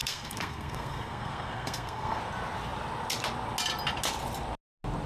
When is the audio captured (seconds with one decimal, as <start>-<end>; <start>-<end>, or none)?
2.2-5.1

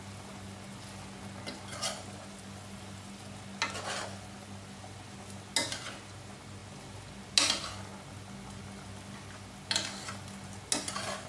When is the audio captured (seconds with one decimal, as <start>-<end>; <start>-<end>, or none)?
0.0-11.3

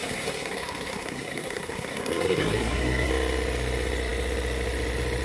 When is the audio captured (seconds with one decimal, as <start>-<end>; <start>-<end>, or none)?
3.1-5.2

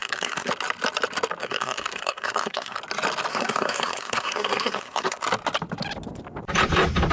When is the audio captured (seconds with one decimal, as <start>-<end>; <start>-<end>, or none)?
0.5-1.4; 2.8-3.3; 5.2-7.1

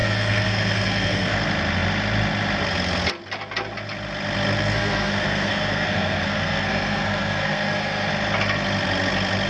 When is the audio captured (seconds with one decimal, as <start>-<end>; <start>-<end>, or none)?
1.4-4.6; 8.1-9.5